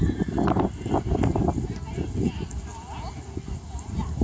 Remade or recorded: recorded